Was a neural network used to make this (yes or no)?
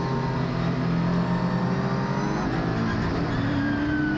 no